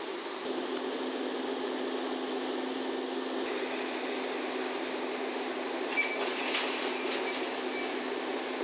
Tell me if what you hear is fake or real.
real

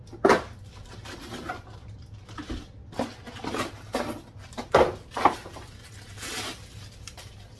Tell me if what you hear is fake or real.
real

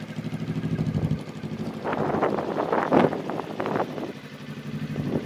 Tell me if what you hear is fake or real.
real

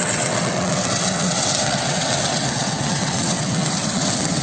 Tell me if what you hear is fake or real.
fake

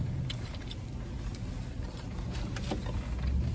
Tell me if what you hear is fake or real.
real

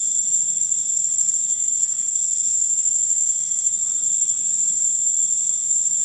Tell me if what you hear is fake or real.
fake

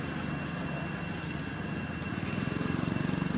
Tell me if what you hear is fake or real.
real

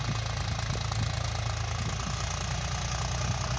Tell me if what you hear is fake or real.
real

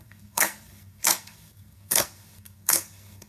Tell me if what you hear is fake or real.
fake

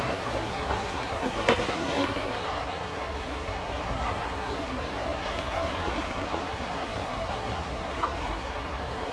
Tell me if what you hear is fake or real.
fake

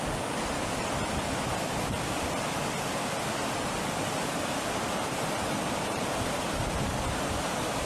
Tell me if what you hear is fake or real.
real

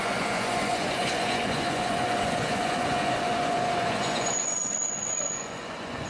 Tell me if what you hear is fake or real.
fake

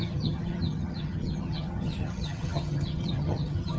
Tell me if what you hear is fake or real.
fake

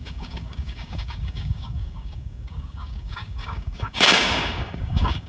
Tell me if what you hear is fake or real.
fake